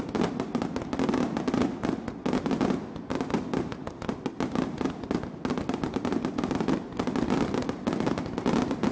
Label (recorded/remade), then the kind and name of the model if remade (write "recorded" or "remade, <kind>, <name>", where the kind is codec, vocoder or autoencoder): recorded